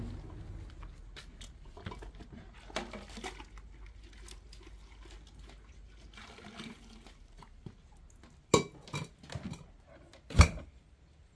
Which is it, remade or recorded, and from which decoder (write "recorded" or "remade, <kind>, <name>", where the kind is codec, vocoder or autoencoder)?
recorded